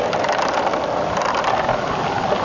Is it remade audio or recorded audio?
recorded